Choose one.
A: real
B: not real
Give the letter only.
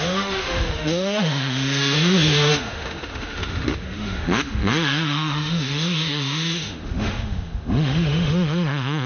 B